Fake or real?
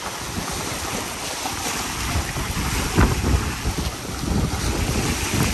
fake